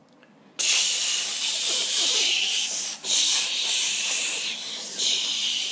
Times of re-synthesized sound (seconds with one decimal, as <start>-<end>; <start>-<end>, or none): 1.8-5.2